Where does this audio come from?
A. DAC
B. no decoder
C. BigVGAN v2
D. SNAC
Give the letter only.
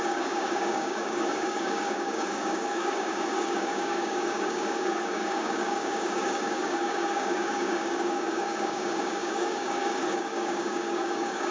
A